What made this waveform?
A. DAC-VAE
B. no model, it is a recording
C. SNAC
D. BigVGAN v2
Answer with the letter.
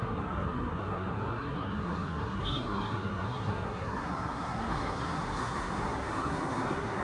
C